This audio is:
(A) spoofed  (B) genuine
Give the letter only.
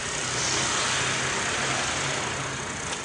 B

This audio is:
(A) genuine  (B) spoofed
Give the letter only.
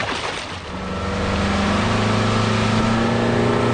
A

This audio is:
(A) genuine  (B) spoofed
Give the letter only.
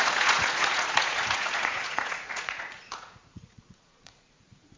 B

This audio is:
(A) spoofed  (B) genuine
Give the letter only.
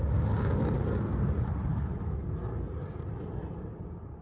B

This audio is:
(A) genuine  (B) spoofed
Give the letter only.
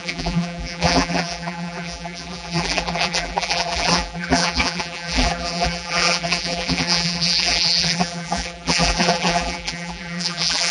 B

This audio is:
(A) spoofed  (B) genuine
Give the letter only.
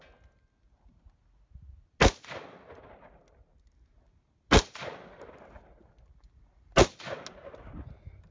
B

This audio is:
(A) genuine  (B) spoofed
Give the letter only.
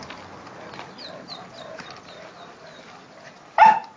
A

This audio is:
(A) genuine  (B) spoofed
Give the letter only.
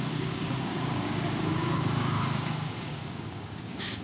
B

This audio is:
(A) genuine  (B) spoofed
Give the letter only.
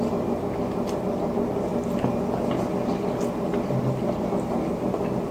A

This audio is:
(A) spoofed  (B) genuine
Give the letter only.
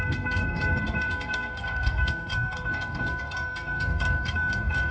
A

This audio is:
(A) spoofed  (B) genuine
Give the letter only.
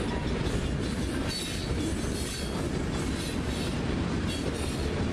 B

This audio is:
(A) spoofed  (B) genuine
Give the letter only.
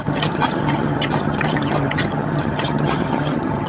A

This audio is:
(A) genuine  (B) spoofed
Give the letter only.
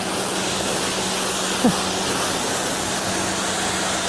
A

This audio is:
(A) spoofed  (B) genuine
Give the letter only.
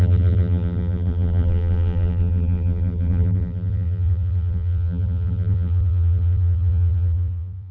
A